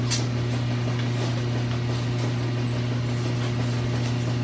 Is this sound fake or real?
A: real